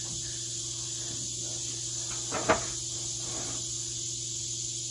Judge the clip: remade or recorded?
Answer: recorded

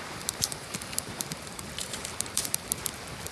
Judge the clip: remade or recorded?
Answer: remade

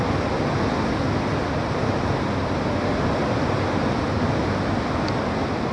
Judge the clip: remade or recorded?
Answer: recorded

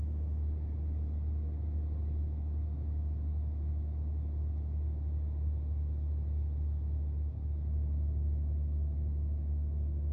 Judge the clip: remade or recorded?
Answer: recorded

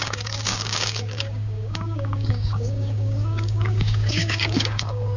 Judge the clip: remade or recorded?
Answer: remade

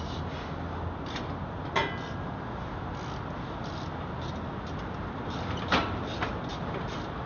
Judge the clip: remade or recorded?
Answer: recorded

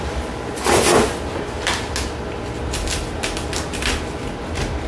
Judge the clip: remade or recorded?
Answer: recorded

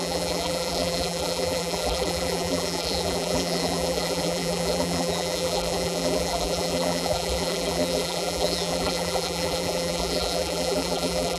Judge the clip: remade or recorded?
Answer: remade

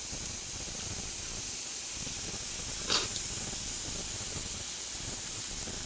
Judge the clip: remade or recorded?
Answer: recorded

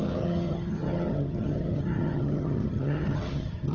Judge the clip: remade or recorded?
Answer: remade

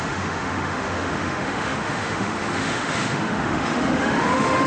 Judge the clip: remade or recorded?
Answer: remade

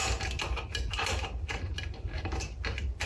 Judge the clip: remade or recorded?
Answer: recorded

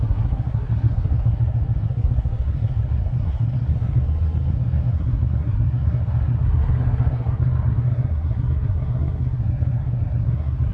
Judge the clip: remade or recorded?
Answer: remade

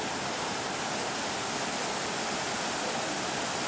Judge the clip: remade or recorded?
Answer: recorded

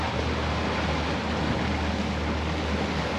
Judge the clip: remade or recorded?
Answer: recorded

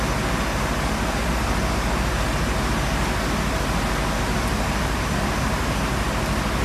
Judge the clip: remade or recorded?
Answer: recorded